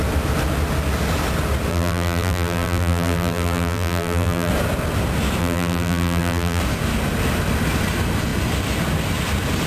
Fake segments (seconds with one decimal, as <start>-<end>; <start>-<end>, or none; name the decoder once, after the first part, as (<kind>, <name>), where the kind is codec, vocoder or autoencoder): 1.7-4.5 (vocoder, BigVGAN v2); 5.4-6.6